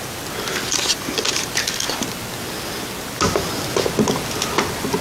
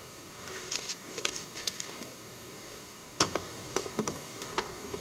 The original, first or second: first